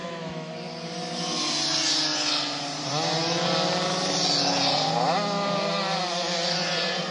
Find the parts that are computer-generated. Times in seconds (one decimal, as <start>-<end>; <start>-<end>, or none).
0.0-0.5